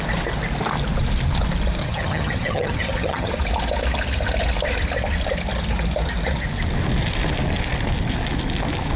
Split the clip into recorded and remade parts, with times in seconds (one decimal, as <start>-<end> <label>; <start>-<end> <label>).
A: 0.0-1.8 recorded; 1.8-3.3 remade; 3.3-9.0 recorded